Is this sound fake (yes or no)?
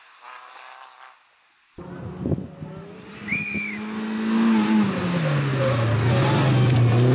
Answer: no